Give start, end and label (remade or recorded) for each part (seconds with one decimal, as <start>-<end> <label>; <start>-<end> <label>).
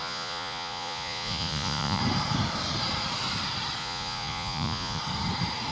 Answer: 0.0-2.0 remade; 2.0-3.8 recorded; 3.8-5.0 remade; 5.0-5.7 recorded